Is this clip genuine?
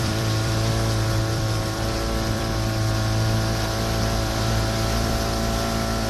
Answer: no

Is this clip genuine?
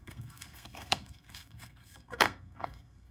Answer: no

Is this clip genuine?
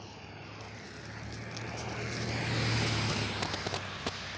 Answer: yes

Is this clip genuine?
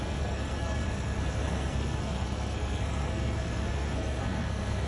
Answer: no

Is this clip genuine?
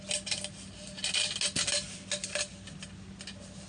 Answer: yes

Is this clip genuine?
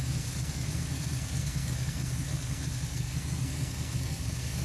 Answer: no